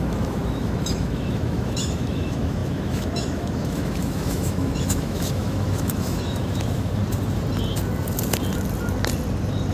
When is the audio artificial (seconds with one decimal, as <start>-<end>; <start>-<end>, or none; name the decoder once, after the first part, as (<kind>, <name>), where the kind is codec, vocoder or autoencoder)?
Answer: 0.0-7.0 (autoencoder, DAC-VAE)